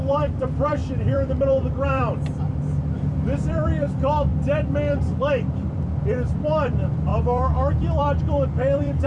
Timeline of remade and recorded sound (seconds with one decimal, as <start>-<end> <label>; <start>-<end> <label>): 0.0-4.3 remade; 4.3-4.9 recorded; 4.9-9.1 remade